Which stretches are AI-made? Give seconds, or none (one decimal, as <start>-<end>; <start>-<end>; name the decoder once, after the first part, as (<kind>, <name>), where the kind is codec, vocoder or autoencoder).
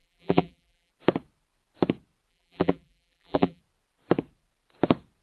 0.0-0.9 (vocoder, BigVGAN v2); 2.3-3.6